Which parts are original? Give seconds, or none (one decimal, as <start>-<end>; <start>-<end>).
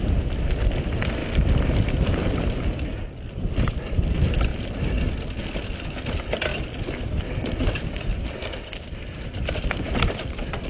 1.2-1.8; 4.5-5.4